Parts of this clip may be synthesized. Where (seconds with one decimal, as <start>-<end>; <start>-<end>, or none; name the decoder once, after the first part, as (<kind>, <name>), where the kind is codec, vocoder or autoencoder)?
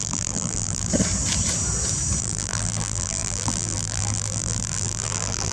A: 0.0-0.9 (vocoder, BigVGAN v2); 2.2-5.5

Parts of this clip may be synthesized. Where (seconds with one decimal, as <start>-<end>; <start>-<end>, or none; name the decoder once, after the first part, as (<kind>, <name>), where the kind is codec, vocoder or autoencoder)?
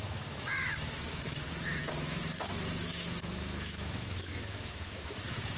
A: 0.0-5.6 (autoencoder, DAC-VAE)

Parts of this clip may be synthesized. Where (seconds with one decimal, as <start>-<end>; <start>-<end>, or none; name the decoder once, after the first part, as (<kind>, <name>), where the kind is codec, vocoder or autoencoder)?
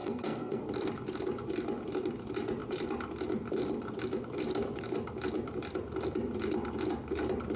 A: 0.0-0.6 (codec, SNAC)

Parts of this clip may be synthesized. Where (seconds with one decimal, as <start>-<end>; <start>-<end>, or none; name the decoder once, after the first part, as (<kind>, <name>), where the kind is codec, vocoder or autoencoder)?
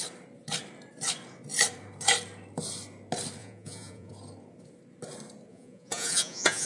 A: 3.4-4.1 (vocoder, Vocos); 5.5-6.7